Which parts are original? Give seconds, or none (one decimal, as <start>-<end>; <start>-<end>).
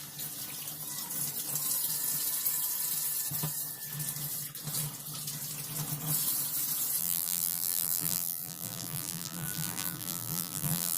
0.0-7.0